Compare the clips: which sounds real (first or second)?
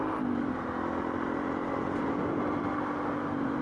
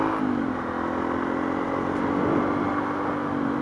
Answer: second